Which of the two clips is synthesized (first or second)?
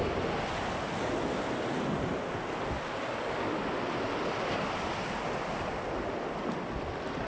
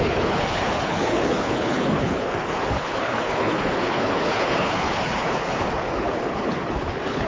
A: second